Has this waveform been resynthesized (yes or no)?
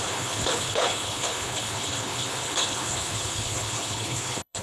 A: yes